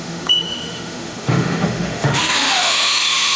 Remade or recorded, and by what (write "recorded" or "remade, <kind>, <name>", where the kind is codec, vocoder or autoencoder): remade, autoencoder, DAC-VAE